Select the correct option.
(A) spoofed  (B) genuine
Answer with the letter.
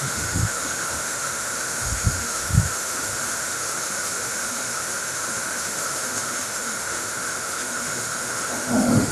A